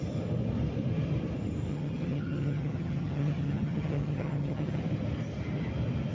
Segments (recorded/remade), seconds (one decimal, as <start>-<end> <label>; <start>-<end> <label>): 0.0-1.7 recorded; 1.7-4.8 remade; 4.8-6.1 recorded